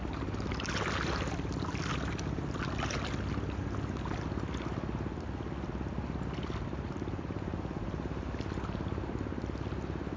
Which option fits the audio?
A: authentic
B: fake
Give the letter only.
A